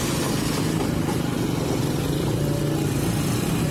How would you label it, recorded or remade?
recorded